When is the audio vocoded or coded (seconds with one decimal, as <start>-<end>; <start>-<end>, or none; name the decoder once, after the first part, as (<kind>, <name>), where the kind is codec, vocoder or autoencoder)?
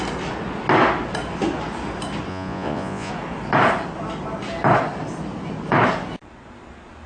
2.3-3.1 (vocoder, Vocos)